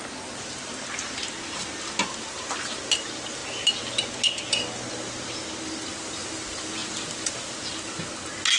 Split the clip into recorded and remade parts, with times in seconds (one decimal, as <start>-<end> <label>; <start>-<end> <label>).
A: 0.0-8.6 recorded